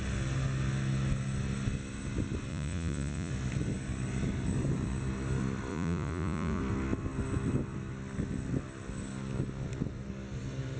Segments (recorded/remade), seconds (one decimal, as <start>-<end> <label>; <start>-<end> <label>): 0.0-2.5 recorded; 2.5-3.3 remade; 3.3-5.7 recorded; 5.7-6.6 remade; 6.6-10.8 recorded